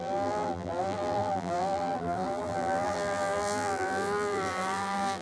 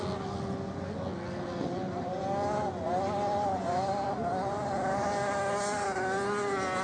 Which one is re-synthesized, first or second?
first